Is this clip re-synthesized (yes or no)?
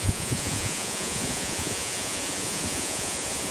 yes